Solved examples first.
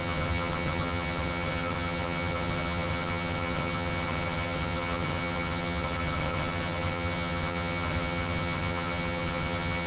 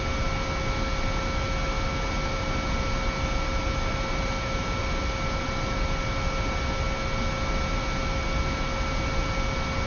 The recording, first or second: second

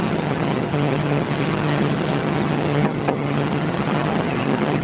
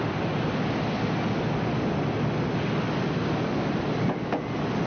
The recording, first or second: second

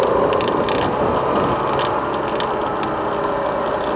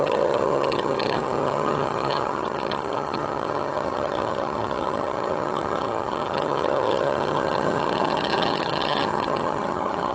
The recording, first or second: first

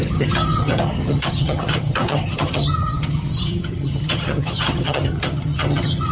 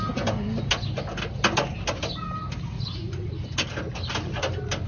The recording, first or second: second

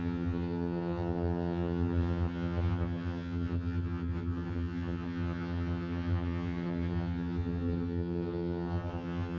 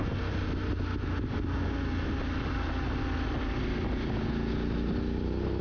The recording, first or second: second